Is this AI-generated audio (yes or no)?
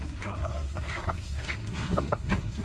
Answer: yes